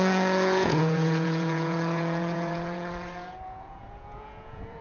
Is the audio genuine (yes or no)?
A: no